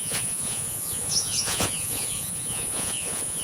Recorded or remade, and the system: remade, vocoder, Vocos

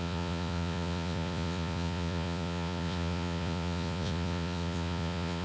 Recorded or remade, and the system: remade, vocoder, Vocos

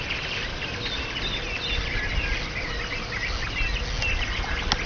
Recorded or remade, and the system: recorded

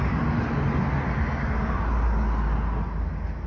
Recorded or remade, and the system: recorded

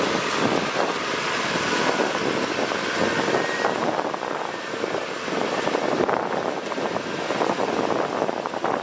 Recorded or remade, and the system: recorded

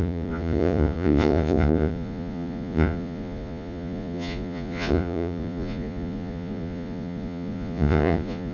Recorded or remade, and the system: remade, vocoder, Vocos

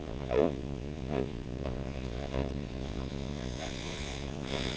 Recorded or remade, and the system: remade, vocoder, Vocos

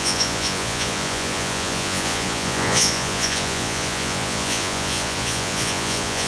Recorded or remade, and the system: remade, vocoder, Vocos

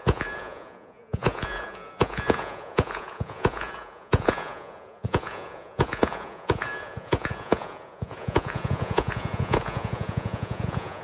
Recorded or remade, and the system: remade, vocoder, Vocos